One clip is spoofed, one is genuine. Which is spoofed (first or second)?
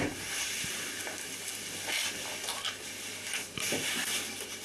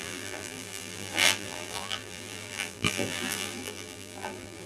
second